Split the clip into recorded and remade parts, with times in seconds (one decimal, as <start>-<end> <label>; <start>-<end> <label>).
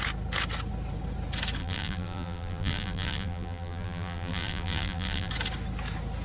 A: 0.0-1.6 recorded; 1.6-5.3 remade; 5.3-6.2 recorded